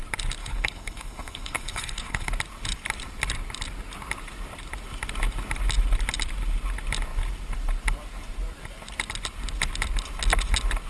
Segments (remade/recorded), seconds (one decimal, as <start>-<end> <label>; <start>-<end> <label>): 0.0-0.4 recorded; 0.4-2.3 remade; 2.3-10.9 recorded

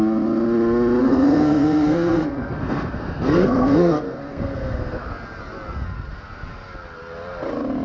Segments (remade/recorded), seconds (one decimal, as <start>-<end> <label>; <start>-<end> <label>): 0.0-1.0 recorded; 1.0-5.1 remade; 5.1-7.8 recorded